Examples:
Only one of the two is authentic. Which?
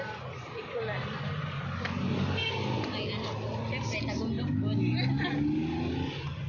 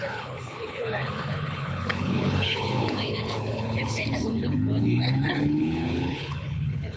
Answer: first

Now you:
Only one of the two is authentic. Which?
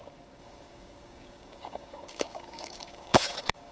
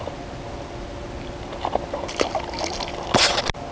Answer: second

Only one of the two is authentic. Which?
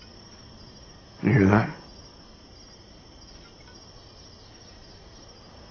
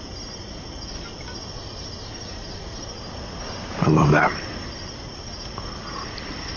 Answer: first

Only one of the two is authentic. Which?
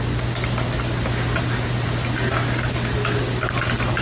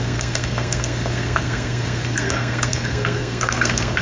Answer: first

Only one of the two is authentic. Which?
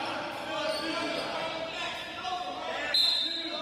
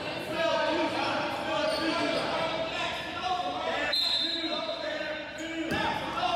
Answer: first